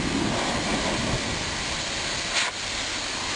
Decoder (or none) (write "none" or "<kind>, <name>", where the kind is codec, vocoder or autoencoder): none